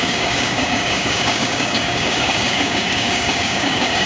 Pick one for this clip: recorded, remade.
remade